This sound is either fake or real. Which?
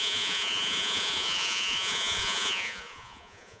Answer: fake